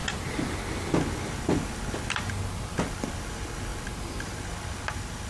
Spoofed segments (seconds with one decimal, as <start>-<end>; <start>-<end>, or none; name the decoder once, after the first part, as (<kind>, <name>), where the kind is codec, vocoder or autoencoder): none